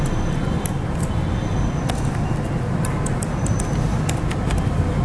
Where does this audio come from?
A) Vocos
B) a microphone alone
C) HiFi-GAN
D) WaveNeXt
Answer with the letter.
B